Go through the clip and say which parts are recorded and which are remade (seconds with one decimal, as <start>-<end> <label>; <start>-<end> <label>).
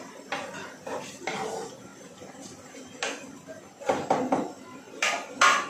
0.0-1.9 recorded; 1.9-2.8 remade; 2.8-5.7 recorded